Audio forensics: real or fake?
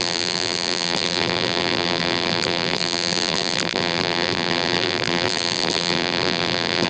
fake